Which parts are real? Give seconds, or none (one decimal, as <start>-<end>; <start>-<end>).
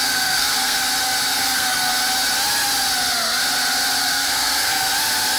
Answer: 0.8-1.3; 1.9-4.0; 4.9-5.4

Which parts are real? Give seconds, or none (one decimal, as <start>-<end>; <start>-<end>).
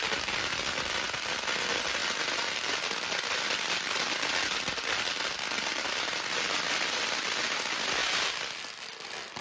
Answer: 0.0-9.4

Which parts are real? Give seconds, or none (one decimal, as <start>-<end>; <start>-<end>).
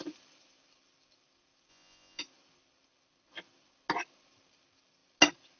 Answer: 0.0-1.7; 2.2-5.6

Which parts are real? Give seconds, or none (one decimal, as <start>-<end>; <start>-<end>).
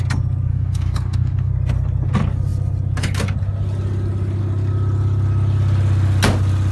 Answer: 0.0-0.5; 1.5-6.7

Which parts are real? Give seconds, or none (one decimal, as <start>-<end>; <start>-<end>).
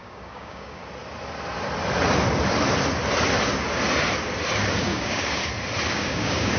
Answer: 0.8-4.8; 5.4-5.9